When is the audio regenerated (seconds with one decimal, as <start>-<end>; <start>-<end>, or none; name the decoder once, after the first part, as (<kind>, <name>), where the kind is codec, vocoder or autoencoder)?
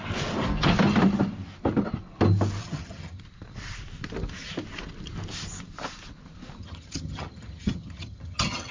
2.6-3.2 (vocoder, HiFi-GAN); 6.6-8.7